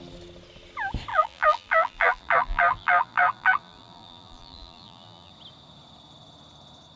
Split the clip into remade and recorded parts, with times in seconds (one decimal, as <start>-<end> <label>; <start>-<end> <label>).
0.0-1.1 recorded; 1.1-5.3 remade; 5.3-7.0 recorded